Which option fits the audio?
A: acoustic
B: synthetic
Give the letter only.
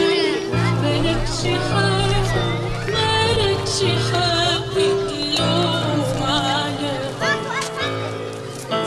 A